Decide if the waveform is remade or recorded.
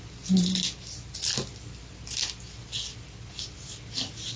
recorded